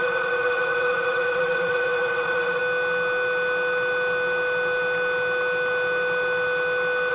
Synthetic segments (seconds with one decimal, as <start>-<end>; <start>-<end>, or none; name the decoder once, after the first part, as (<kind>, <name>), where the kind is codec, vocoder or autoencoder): 0.0-2.6 (vocoder, WaveNeXt)